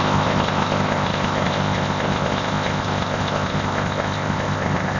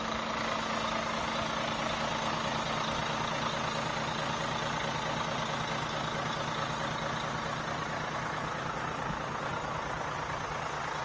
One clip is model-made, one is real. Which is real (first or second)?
second